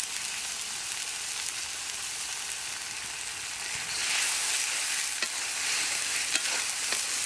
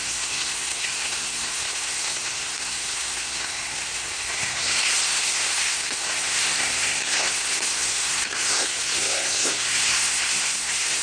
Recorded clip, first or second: first